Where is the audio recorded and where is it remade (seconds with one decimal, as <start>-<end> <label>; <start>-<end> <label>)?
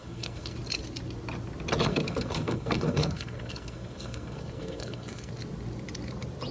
0.0-0.6 remade; 0.6-1.8 recorded; 1.8-5.3 remade; 5.3-6.5 recorded